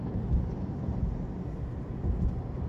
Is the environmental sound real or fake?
real